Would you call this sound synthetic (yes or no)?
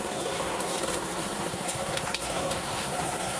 yes